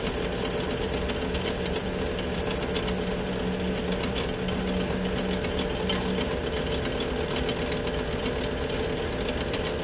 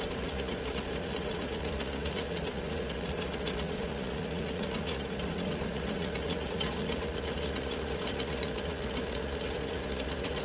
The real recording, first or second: first